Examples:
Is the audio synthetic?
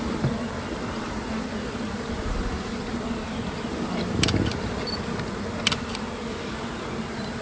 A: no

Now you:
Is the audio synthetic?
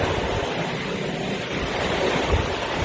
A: no